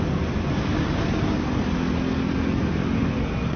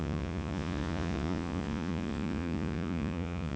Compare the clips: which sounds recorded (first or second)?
first